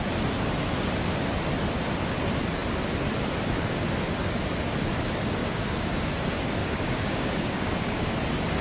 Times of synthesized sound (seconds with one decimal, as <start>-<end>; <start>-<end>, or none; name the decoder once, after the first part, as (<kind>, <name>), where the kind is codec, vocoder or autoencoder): 5.4-6.1 (codec, DAC); 6.6-8.1